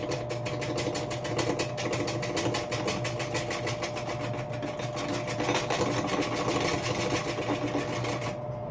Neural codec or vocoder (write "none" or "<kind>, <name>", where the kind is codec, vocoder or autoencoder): none